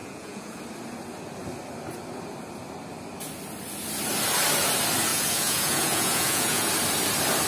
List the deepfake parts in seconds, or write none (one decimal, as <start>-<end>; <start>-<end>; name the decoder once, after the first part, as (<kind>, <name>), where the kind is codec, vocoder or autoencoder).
0.0-0.6 (vocoder, Vocos); 5.1-6.7